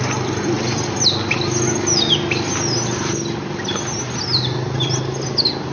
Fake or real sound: real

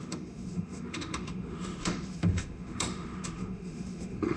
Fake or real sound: fake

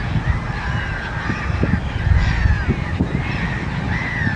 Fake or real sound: real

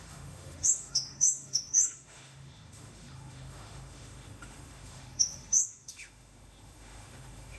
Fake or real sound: fake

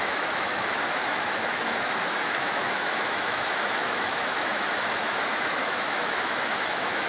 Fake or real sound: fake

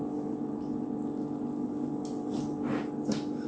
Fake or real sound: real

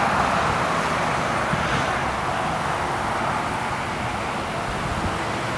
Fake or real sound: real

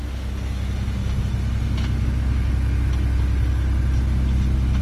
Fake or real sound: real